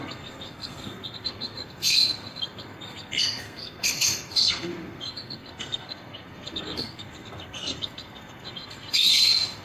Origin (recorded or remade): remade